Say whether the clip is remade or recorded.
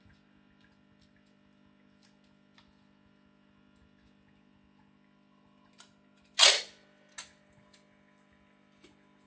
recorded